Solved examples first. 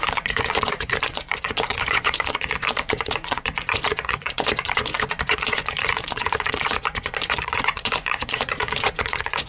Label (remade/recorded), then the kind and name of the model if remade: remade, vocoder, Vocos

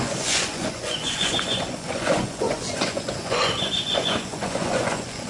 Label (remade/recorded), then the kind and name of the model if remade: remade, vocoder, Vocos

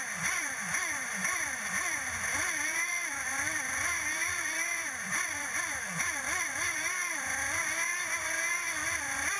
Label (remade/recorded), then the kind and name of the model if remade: remade, vocoder, Vocos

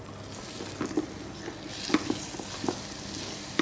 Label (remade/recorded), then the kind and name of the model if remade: recorded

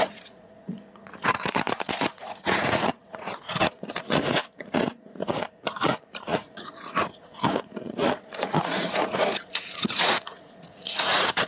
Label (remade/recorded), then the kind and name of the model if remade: remade, vocoder, Vocos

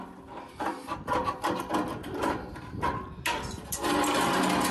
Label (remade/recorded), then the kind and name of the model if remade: recorded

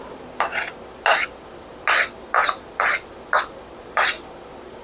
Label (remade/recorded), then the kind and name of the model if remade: recorded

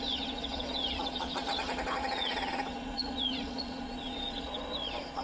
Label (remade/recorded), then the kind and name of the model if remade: remade, vocoder, Vocos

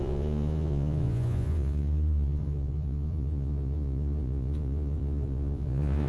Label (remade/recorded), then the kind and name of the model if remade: remade, vocoder, Vocos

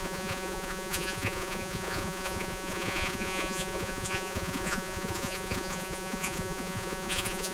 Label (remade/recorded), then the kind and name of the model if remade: remade, vocoder, Vocos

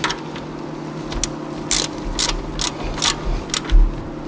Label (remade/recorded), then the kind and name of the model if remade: recorded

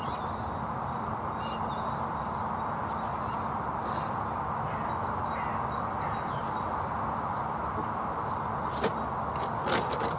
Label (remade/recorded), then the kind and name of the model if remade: recorded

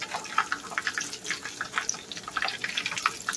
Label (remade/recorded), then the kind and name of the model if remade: recorded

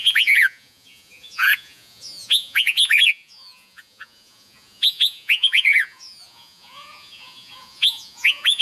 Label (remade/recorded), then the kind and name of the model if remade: remade, vocoder, Vocos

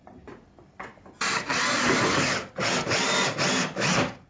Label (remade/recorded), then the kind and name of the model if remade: recorded